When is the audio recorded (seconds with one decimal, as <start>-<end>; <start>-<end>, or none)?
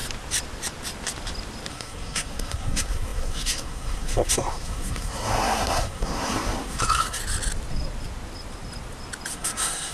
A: 0.0-1.7; 7.2-9.3